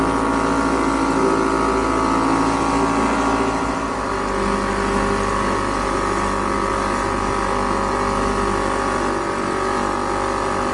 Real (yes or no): yes